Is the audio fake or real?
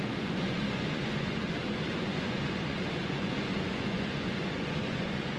fake